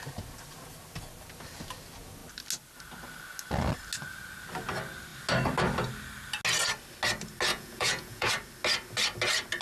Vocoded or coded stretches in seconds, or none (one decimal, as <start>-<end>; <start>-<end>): 7.5-8.3